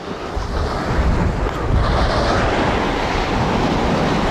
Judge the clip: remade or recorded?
recorded